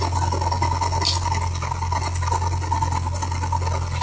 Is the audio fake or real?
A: real